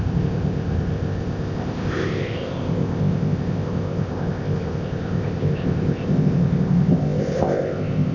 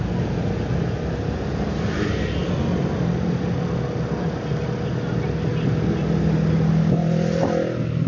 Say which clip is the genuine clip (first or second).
second